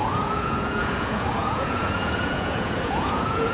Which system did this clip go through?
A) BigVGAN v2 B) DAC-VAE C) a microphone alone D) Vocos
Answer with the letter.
D